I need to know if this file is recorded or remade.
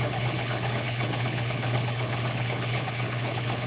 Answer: remade